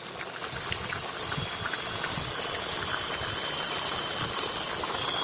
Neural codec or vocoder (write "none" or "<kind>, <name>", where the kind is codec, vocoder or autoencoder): none